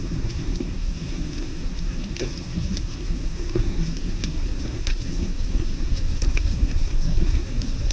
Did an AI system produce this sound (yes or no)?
yes